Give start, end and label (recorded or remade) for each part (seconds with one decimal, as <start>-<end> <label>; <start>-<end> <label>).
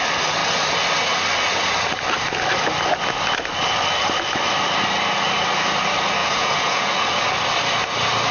0.0-6.2 recorded; 6.2-6.9 remade; 6.9-8.3 recorded